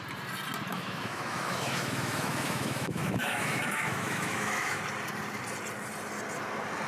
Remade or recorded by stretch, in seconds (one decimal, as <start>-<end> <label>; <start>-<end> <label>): 0.0-0.7 recorded; 0.7-4.8 remade; 4.8-6.9 recorded